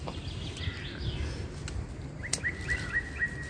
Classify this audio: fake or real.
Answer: real